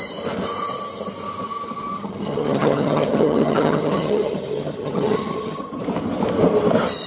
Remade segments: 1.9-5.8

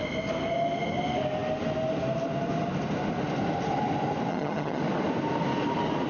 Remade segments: 4.3-4.8

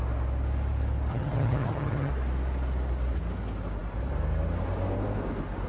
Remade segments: 1.1-2.1